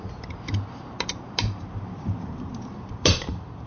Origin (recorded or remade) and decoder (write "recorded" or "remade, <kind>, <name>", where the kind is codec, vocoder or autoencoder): remade, vocoder, BigVGAN v2